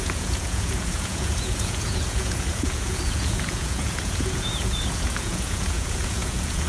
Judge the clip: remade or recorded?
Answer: remade